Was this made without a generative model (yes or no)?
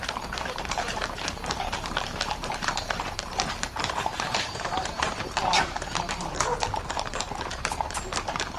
no